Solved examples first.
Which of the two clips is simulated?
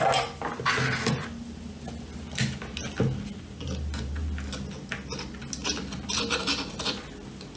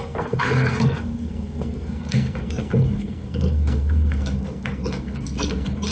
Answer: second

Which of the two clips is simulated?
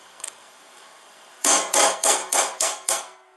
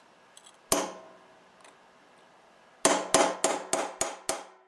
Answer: first